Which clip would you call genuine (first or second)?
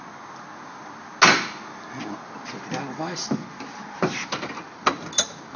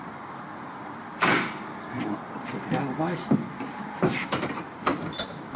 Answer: first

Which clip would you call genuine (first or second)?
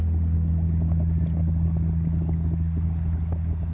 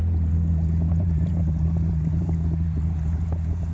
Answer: first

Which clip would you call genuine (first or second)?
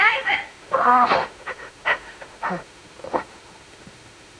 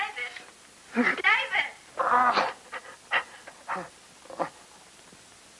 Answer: second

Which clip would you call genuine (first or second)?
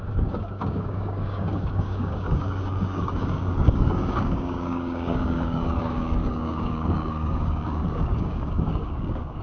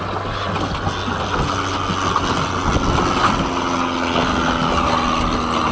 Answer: second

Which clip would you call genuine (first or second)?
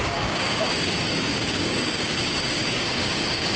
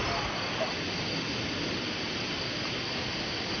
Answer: second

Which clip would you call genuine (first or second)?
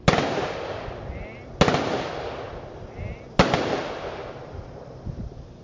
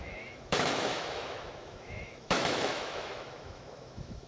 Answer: first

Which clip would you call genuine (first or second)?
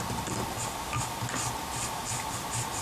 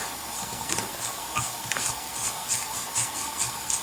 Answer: first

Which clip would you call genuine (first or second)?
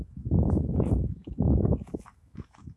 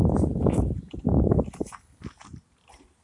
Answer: second